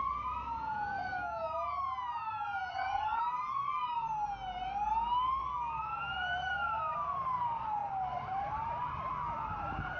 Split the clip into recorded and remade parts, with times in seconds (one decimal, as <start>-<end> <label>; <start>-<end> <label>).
0.0-2.7 recorded; 2.7-3.2 remade; 3.2-10.0 recorded